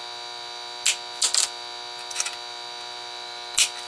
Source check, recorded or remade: recorded